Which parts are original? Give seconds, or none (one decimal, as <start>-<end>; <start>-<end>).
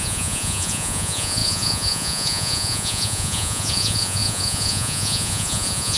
none